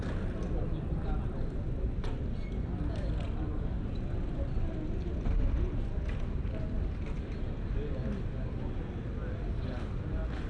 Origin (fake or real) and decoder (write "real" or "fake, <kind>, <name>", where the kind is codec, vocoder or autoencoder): real